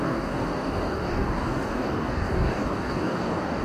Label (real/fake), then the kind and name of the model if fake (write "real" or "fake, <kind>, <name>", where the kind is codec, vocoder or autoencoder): fake, codec, DAC